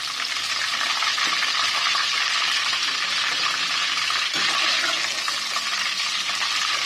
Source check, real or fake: real